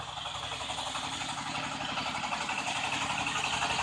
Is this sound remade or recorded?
recorded